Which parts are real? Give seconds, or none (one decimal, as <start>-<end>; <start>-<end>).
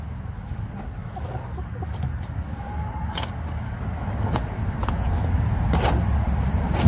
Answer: 0.0-0.5; 4.6-6.9